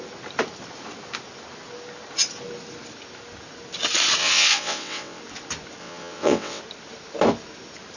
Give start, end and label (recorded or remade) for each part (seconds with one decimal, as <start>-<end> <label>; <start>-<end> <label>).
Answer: 0.0-4.2 recorded; 4.2-5.2 remade; 5.2-5.8 recorded; 5.8-6.6 remade; 6.6-8.0 recorded